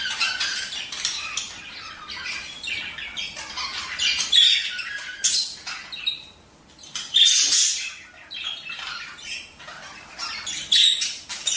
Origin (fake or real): real